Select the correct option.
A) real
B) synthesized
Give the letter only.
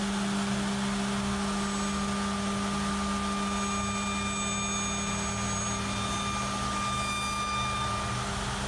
A